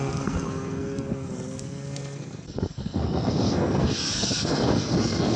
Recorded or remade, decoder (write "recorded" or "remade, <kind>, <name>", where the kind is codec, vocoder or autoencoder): remade, codec, SNAC